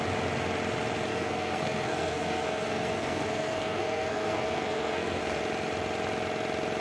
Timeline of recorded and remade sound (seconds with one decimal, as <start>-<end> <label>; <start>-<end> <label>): 0.0-1.1 recorded; 1.1-5.2 remade; 5.2-6.8 recorded